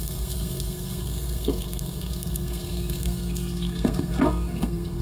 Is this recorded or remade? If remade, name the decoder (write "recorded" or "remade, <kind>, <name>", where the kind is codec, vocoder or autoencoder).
remade, codec, SNAC